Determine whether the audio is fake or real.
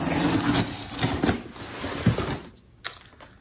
real